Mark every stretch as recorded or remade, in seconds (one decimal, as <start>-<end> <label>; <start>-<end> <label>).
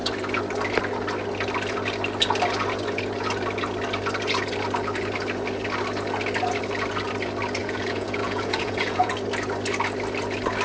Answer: 0.0-7.6 recorded; 7.6-9.1 remade; 9.1-10.6 recorded